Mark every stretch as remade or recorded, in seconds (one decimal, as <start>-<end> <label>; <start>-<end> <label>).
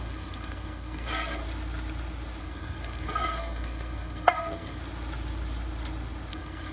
0.0-1.4 remade; 1.4-2.4 recorded; 2.4-4.8 remade; 4.8-6.3 recorded; 6.3-6.7 remade